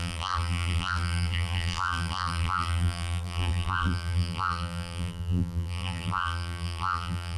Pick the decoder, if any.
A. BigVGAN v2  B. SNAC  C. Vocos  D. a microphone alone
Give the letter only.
A